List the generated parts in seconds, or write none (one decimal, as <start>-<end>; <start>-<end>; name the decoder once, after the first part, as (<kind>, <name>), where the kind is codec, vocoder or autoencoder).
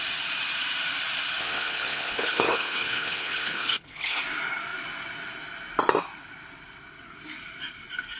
1.4-4.2 (codec, HILCodec)